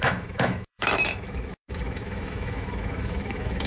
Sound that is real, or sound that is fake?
fake